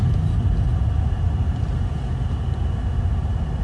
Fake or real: real